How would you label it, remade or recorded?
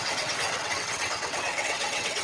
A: remade